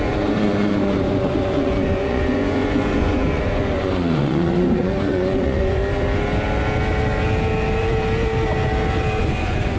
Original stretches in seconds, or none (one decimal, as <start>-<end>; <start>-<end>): 5.8-9.2

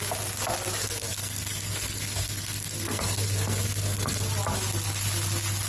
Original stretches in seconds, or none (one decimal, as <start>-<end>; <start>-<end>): 0.0-0.8; 4.2-5.7